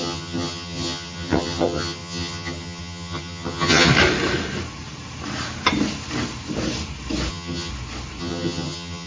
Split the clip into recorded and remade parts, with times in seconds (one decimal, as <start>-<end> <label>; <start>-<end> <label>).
0.0-3.9 remade; 3.9-7.3 recorded; 7.3-7.7 remade; 7.7-8.2 recorded; 8.2-9.1 remade